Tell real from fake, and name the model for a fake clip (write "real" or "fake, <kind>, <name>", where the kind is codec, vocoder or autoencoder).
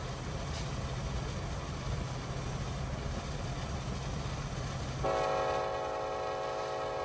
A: real